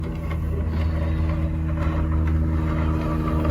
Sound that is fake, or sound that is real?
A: real